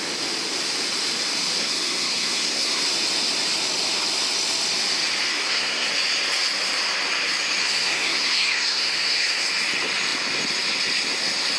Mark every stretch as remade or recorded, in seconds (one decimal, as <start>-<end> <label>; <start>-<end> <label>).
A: 0.0-1.6 recorded; 1.6-2.8 remade; 2.8-5.3 recorded; 5.3-5.9 remade; 5.9-7.6 recorded; 7.6-9.4 remade; 9.4-11.6 recorded